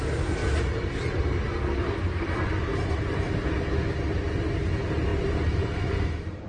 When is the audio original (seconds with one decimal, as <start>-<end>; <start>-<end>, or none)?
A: 0.4-4.3